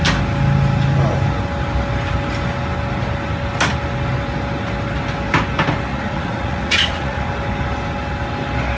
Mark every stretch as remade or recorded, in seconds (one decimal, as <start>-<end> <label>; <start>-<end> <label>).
0.0-5.9 recorded; 5.9-7.2 remade; 7.2-8.8 recorded